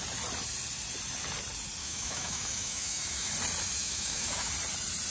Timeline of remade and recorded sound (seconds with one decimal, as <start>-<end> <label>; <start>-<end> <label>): 0.0-1.8 recorded; 1.8-3.3 remade; 3.3-3.8 recorded; 3.8-4.5 remade; 4.5-5.1 recorded